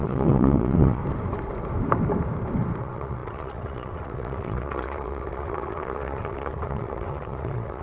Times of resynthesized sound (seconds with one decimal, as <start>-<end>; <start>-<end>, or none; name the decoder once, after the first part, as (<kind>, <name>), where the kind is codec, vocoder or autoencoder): 0.0-1.0 (vocoder, WaveNeXt); 2.8-7.8